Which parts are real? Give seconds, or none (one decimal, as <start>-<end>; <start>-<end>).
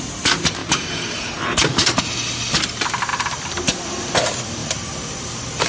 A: 0.0-0.6; 2.0-4.6